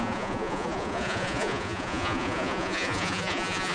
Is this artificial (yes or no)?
yes